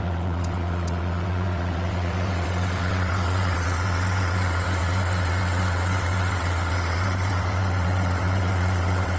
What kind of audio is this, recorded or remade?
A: remade